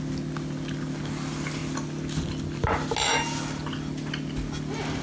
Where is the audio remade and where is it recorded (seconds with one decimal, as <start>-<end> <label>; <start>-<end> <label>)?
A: 0.0-5.0 recorded